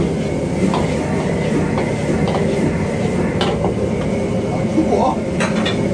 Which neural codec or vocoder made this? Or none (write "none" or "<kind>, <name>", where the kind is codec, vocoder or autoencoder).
none